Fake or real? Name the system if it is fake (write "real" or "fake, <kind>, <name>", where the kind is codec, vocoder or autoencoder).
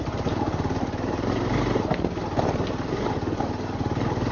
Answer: real